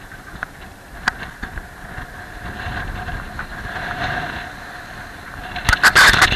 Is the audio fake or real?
real